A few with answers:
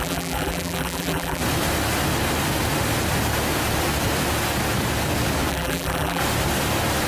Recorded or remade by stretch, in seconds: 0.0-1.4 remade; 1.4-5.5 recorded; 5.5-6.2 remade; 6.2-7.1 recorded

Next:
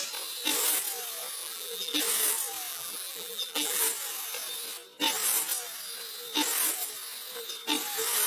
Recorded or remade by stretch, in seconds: 0.0-1.4 recorded; 1.4-2.0 remade; 2.0-2.7 recorded; 2.7-3.8 remade; 3.8-8.3 recorded

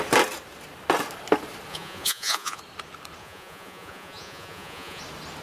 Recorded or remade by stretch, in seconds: 0.0-1.7 recorded; 1.7-2.6 remade; 2.6-3.2 recorded; 3.2-5.0 remade; 5.0-5.4 recorded